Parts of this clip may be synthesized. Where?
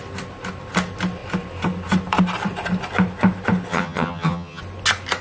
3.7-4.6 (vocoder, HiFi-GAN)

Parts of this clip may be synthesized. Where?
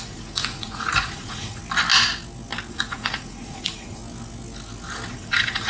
0.0-1.6 (vocoder, Vocos); 2.7-4.0; 5.1-5.7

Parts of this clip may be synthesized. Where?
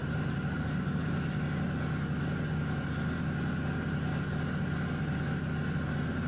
0.0-1.4 (vocoder, BigVGAN v2)